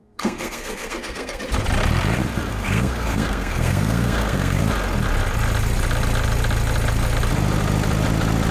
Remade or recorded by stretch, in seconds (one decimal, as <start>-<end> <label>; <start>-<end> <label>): 0.0-1.4 remade; 1.4-2.5 recorded; 2.5-4.6 remade; 4.6-8.5 recorded